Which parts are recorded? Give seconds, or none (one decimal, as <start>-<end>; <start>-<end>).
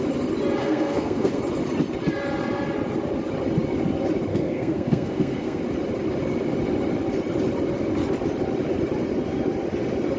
0.0-0.6; 1.4-4.3; 5.6-10.2